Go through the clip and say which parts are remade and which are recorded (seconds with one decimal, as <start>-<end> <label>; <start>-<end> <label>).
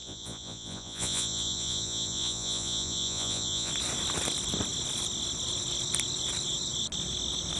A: 0.0-3.7 remade; 3.7-7.6 recorded